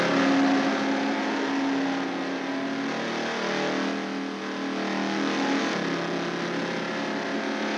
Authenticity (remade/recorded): recorded